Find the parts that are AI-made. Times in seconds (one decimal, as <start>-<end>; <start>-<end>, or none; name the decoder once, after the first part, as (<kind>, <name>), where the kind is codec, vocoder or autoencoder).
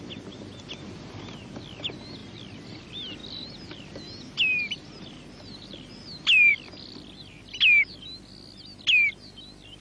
none